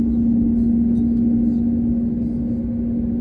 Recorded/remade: recorded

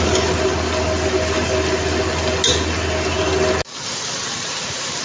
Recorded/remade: recorded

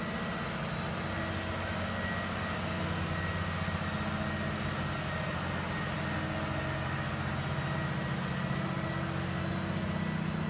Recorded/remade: recorded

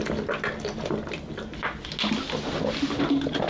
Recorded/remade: recorded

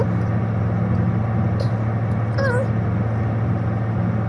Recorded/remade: recorded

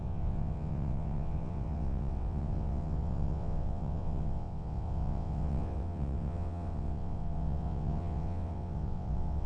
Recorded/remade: remade